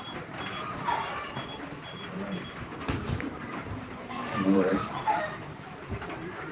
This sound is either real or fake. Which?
fake